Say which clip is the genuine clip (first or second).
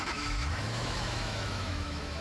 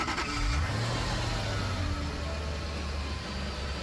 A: second